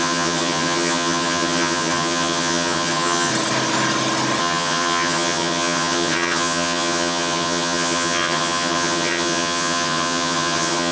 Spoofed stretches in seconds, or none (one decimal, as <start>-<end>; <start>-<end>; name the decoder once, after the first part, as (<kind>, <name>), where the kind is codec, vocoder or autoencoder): 0.0-3.3 (vocoder, HiFi-GAN); 4.4-10.9